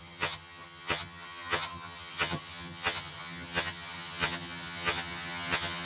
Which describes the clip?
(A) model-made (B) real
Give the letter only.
A